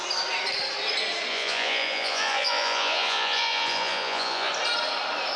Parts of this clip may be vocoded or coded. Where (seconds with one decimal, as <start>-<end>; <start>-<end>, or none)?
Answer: 1.3-4.5